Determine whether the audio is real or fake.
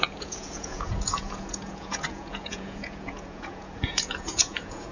fake